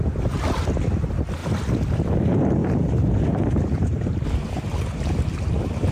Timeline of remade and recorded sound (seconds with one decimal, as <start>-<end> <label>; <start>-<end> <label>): 0.0-2.6 recorded; 2.6-4.6 remade; 4.6-5.9 recorded